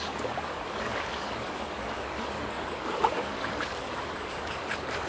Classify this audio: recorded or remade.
remade